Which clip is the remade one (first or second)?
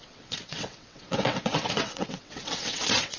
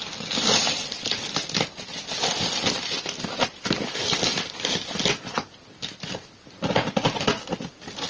first